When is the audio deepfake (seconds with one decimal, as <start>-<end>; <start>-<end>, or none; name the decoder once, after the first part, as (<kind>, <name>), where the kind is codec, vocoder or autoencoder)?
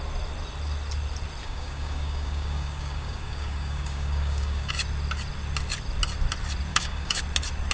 1.4-4.7 (codec, DAC); 6.7-7.2